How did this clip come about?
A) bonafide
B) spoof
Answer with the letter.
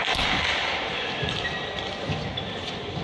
B